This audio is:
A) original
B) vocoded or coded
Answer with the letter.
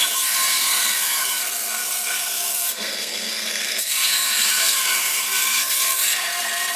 B